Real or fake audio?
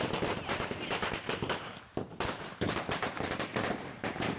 fake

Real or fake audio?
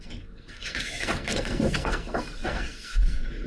fake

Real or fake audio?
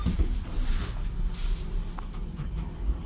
real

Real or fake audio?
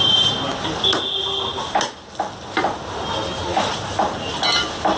real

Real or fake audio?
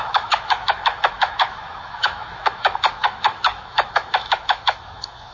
fake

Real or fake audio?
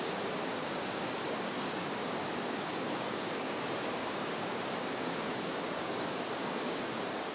fake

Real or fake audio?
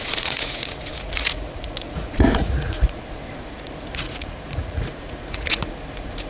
fake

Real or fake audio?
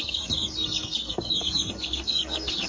fake